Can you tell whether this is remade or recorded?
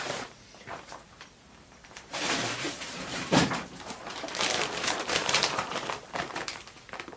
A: remade